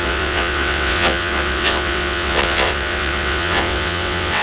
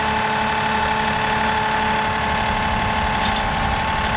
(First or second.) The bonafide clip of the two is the second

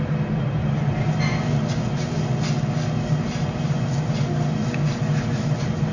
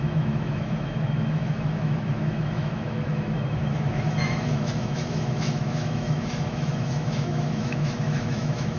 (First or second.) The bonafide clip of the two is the first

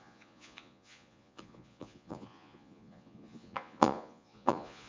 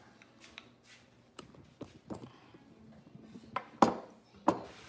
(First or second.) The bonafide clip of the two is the second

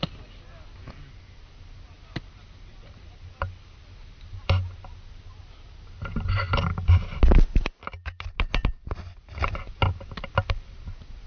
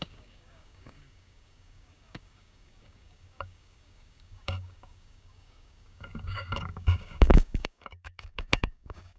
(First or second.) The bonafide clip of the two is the first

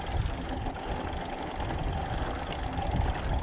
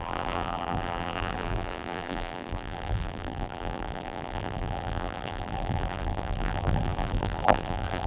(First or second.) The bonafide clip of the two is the first